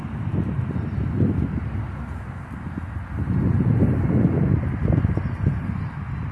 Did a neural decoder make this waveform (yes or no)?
no